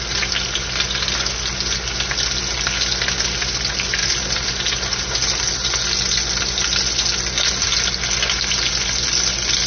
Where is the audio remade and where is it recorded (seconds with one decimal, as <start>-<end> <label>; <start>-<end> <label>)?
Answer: 0.0-9.7 recorded